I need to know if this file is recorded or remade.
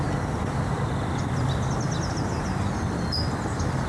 recorded